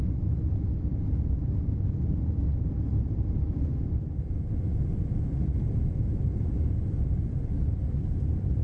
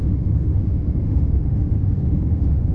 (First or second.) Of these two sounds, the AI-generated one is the second